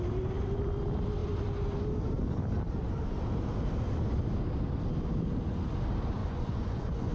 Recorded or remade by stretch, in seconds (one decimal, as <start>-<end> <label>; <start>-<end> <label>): 0.0-6.2 recorded; 6.2-7.1 remade